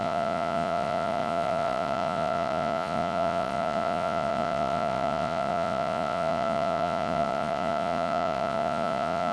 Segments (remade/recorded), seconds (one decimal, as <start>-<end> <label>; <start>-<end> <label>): 0.0-9.3 remade